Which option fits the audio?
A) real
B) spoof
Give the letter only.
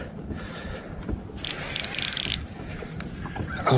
A